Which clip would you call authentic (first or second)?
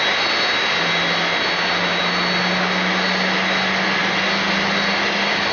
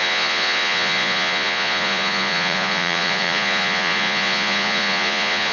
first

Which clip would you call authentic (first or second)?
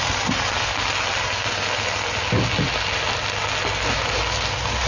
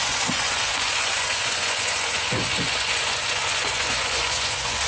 first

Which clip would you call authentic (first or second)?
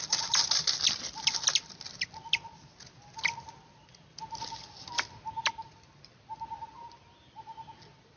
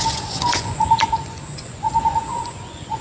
first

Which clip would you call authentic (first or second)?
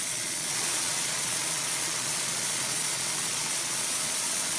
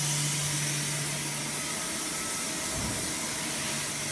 second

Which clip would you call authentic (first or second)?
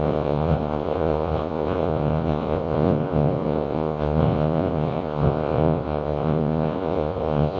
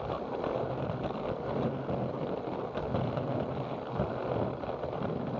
second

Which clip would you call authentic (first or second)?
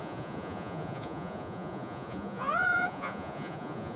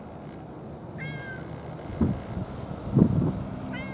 second